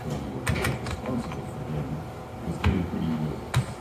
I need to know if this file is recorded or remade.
recorded